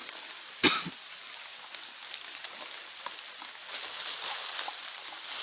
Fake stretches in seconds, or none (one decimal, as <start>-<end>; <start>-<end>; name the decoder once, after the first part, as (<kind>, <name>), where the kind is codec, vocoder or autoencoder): none